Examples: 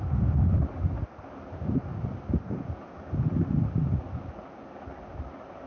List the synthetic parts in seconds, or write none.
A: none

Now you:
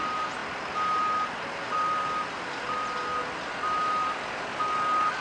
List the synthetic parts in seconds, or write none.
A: none

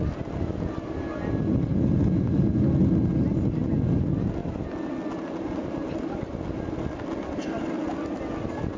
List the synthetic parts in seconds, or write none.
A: none

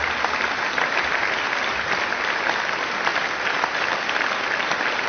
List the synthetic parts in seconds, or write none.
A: none

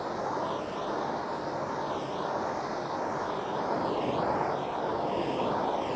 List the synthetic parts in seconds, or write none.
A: 4.9-5.6 (codec, DAC)

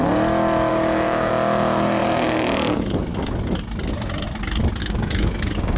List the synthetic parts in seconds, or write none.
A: 0.7-1.3 (codec, DAC); 4.8-5.8

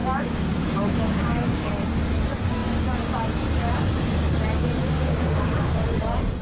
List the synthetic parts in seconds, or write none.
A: 0.0-1.7 (codec, DAC); 4.8-5.8

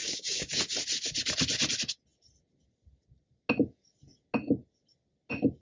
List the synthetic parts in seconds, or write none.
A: 0.0-0.6 (codec, DAC)